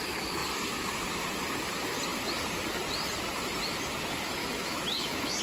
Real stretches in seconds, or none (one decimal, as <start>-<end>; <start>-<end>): 0.0-4.4